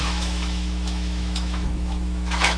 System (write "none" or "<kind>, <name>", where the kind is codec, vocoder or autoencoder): autoencoder, DAC-VAE